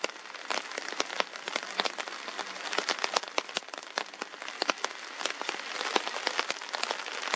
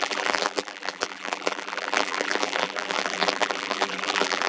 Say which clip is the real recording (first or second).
first